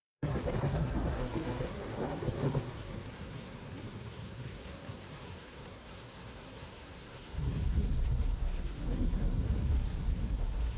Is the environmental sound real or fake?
fake